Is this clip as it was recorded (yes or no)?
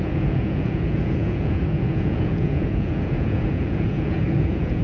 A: no